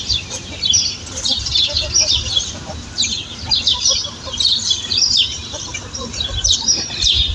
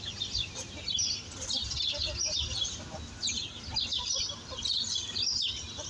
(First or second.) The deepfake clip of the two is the first